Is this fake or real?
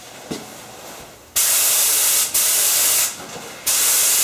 real